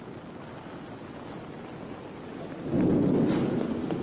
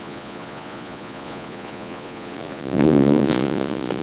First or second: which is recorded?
first